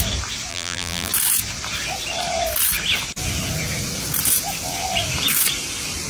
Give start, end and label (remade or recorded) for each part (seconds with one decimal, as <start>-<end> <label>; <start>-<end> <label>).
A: 0.0-0.5 recorded; 0.5-1.1 remade; 1.1-6.1 recorded